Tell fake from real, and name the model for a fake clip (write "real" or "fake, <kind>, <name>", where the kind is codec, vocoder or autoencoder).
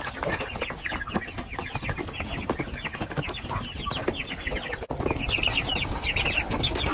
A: real